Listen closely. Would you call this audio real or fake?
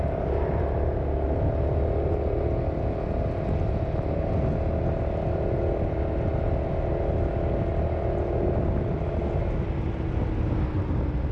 real